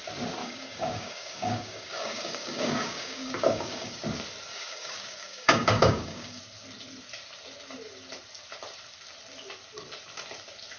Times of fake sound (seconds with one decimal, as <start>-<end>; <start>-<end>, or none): 0.4-4.0; 4.5-6.4